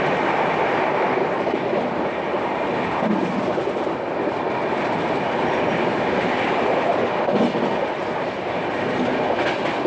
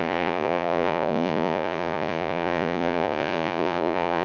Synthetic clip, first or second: second